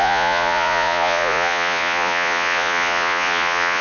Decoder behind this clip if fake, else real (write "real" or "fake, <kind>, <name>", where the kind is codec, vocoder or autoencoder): fake, vocoder, Vocos